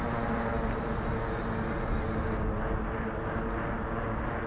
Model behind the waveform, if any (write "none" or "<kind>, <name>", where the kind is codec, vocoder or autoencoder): none